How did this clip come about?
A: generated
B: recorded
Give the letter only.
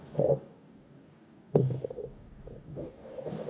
A